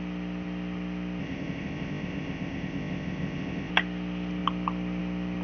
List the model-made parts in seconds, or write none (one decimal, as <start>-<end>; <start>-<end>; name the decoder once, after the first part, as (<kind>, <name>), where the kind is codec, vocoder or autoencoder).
1.2-3.7 (codec, ZipCodec)